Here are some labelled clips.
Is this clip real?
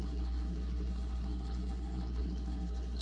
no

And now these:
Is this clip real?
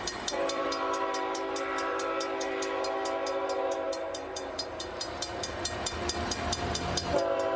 no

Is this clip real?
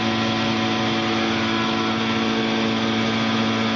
yes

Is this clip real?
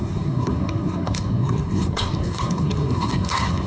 no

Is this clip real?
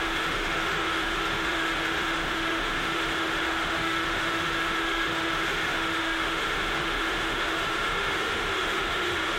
no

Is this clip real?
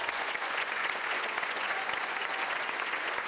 no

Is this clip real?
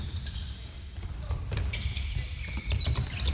yes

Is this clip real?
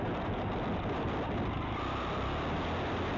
yes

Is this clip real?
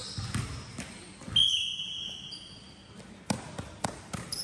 yes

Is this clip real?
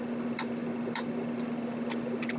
yes